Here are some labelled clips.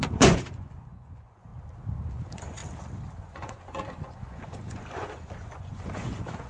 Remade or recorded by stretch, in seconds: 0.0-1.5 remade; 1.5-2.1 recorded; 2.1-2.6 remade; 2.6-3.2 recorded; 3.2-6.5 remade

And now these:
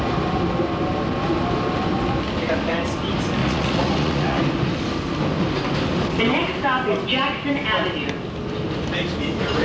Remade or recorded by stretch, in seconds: 0.0-3.4 recorded; 3.4-4.4 remade; 4.4-9.6 recorded

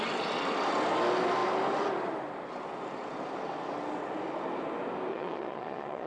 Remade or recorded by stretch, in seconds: 0.0-5.1 recorded; 5.1-6.1 remade

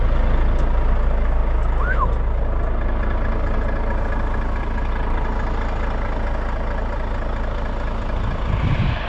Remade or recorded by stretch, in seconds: 0.0-9.1 recorded

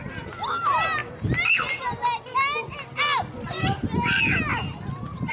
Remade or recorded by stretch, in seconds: 0.0-5.3 recorded